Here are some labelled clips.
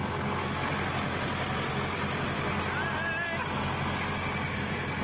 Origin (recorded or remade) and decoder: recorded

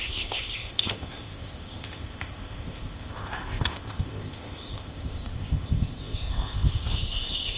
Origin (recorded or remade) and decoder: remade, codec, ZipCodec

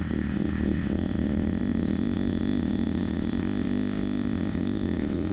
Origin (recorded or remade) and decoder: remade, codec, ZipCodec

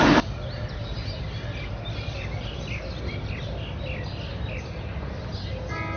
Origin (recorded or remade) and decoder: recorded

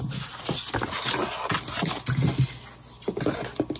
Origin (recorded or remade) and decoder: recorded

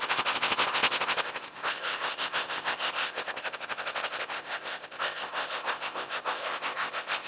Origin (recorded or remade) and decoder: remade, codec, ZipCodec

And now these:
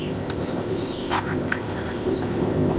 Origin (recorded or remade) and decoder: remade, codec, ZipCodec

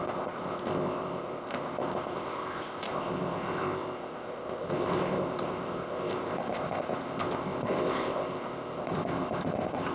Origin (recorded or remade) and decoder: remade, codec, ZipCodec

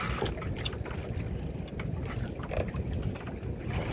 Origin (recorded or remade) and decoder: recorded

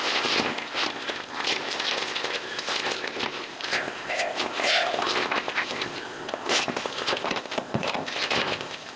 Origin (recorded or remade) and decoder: remade, codec, ZipCodec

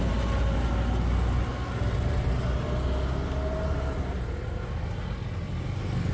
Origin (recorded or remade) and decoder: recorded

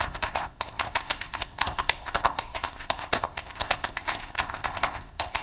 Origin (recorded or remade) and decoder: remade, codec, ZipCodec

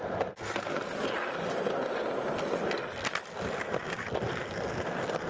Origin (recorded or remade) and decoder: recorded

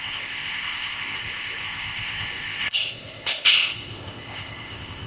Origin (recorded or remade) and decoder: remade, codec, ZipCodec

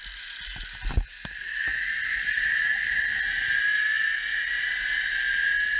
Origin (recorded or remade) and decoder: recorded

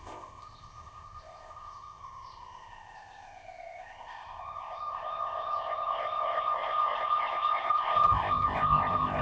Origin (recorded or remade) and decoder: remade, codec, ZipCodec